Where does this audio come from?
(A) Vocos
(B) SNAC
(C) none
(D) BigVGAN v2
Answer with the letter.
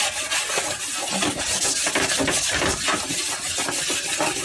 C